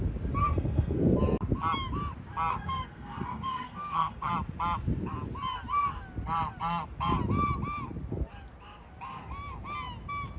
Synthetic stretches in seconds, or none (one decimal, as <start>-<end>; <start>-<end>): 0.4-1.0; 2.5-4.3